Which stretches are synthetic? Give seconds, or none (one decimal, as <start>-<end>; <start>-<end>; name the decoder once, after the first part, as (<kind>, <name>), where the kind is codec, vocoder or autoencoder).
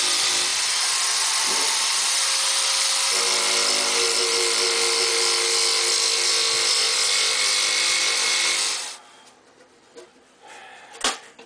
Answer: none